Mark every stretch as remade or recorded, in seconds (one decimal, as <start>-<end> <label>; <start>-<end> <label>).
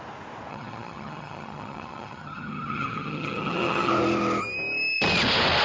0.0-0.5 recorded; 0.5-3.9 remade; 3.9-5.6 recorded